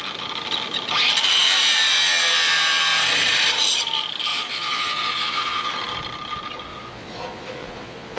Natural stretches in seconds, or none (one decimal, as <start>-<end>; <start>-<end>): 0.0-4.3; 5.7-6.7